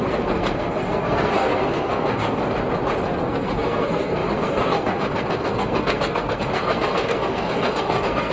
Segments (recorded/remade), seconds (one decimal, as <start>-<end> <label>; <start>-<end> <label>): 0.0-2.4 remade; 2.4-3.2 recorded; 3.2-8.3 remade